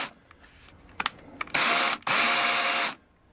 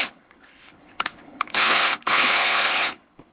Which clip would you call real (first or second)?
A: first